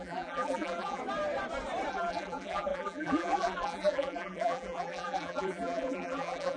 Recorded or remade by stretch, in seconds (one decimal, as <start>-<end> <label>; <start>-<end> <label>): 0.0-1.0 remade; 1.0-1.9 recorded; 1.9-6.6 remade